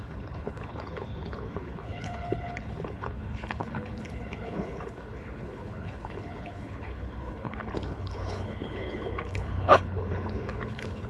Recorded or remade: remade